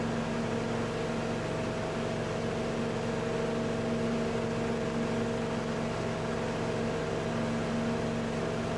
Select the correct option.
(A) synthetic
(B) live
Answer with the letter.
B